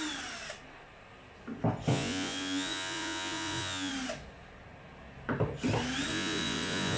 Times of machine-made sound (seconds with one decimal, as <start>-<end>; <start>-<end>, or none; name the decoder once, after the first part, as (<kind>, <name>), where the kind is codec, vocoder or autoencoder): 1.9-3.9 (vocoder, Vocos); 6.1-7.0